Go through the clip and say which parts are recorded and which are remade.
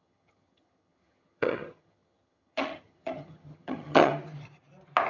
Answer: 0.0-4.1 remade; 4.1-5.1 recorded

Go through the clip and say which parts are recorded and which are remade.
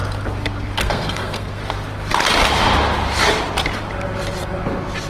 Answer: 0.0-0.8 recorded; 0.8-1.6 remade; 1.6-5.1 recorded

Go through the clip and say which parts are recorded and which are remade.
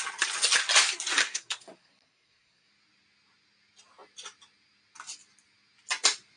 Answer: 0.0-1.2 recorded; 1.2-2.7 remade; 2.7-6.4 recorded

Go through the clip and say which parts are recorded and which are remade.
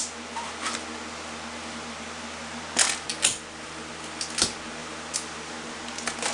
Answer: 0.0-4.8 recorded; 4.8-5.5 remade; 5.5-6.3 recorded